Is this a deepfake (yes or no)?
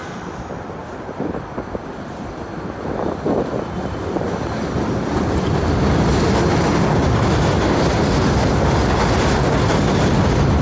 no